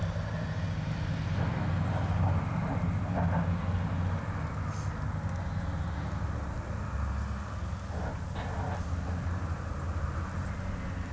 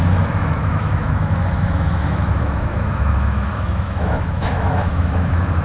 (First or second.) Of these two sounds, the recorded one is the first